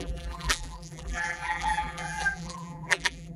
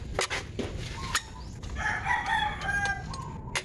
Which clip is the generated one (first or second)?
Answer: first